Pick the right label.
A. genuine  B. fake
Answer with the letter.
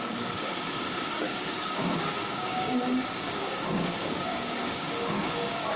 B